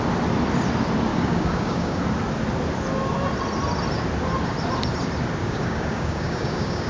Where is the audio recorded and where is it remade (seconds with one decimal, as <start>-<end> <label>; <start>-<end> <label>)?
0.0-1.1 recorded; 1.1-2.0 remade; 2.0-5.4 recorded; 5.4-6.9 remade